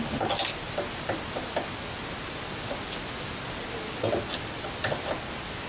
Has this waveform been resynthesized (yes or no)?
no